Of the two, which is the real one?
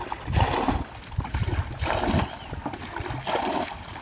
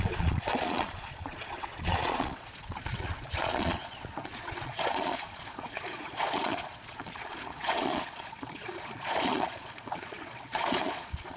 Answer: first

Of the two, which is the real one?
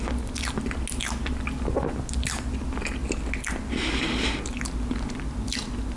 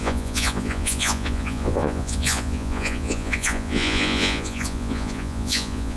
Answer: first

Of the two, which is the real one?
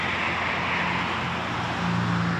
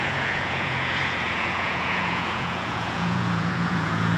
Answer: first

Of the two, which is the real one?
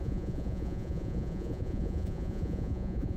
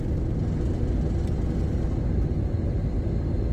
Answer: second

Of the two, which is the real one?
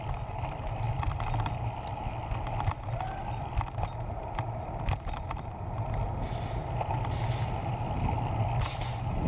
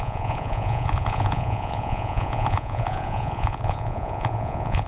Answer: first